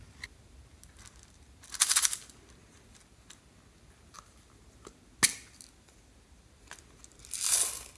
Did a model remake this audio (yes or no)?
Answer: no